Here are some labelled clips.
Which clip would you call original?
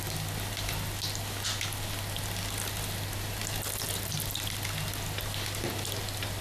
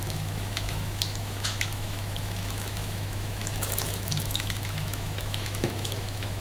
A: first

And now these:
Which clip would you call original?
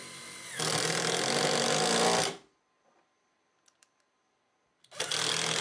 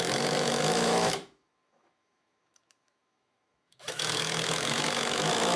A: first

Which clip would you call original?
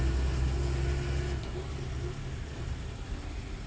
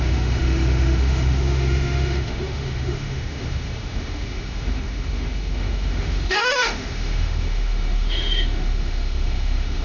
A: first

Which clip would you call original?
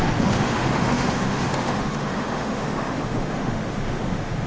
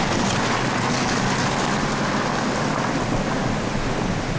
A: second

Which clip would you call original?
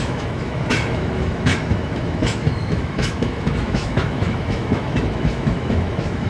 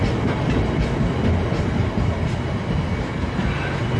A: second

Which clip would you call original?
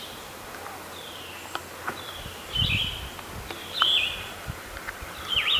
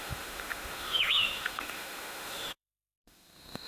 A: first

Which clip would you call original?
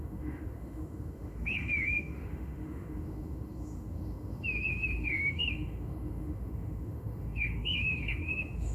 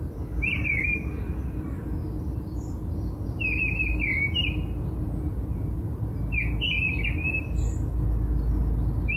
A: second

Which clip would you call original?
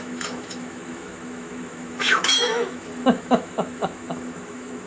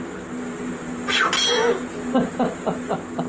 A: second